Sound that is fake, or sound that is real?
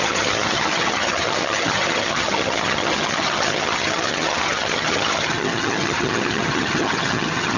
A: fake